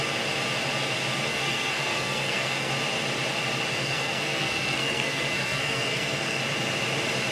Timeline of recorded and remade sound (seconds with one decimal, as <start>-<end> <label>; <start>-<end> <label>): 0.0-1.3 recorded; 1.3-2.7 remade; 2.7-3.8 recorded; 3.8-6.4 remade; 6.4-7.3 recorded